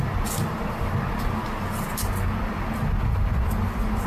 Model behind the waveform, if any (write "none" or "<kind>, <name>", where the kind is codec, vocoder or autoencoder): none